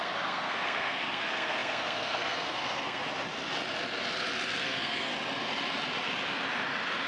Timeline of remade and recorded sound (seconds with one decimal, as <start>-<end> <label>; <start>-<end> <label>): 0.0-3.0 remade; 3.0-4.6 recorded; 4.6-5.1 remade; 5.1-7.1 recorded